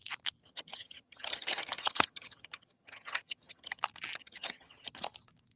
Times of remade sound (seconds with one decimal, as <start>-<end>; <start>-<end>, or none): 0.4-3.8; 4.2-4.9